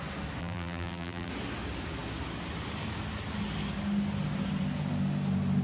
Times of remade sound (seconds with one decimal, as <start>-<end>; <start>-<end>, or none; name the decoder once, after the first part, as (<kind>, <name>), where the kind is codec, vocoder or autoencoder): 0.4-1.3 (vocoder, BigVGAN v2)